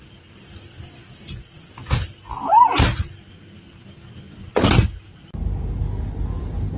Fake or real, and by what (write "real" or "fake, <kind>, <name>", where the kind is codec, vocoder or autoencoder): real